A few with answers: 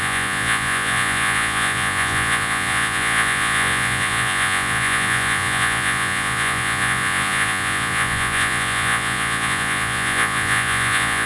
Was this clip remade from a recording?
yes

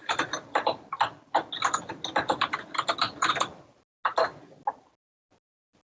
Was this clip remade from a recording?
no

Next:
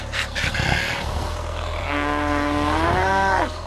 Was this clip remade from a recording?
yes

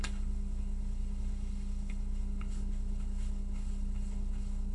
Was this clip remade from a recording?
yes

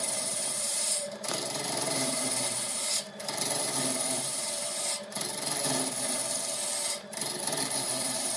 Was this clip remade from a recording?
yes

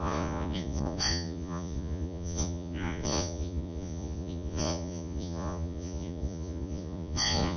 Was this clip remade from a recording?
yes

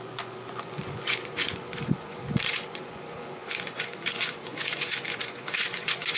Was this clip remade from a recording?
yes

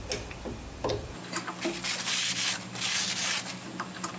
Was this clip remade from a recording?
no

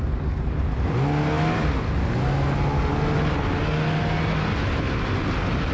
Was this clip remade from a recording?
no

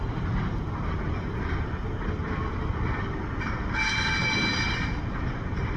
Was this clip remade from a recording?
no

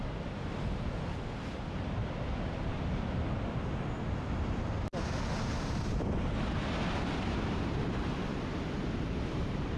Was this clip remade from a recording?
no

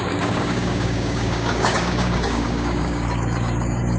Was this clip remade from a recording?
yes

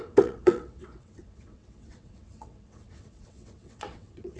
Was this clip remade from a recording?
yes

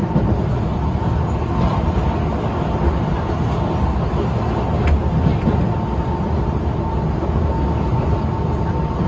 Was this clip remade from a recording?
no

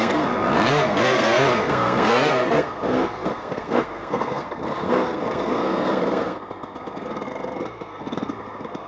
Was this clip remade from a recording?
yes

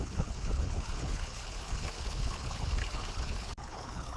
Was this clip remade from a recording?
yes